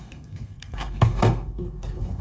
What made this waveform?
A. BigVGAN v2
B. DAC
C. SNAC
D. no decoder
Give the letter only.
C